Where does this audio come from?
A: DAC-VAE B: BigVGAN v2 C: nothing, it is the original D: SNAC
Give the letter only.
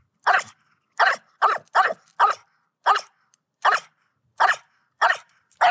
B